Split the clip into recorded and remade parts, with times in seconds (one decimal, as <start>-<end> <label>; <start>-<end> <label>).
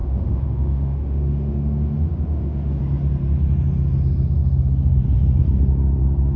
0.0-2.8 remade; 2.8-6.4 recorded